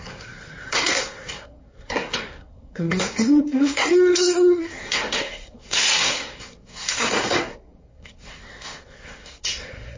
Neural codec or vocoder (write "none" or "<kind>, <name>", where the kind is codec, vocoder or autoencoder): codec, SNAC